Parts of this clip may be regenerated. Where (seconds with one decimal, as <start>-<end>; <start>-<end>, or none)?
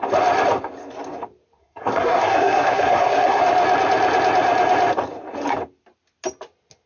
1.6-3.4